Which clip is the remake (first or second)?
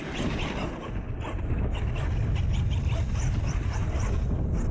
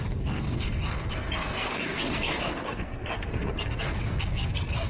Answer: second